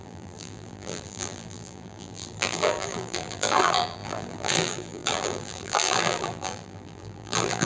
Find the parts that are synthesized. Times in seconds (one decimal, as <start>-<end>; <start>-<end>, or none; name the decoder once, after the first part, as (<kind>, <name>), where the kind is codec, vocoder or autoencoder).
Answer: 0.0-7.7 (vocoder, BigVGAN v2)